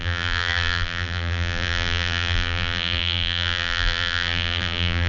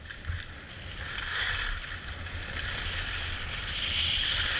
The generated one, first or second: first